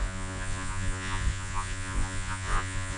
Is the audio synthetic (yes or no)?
yes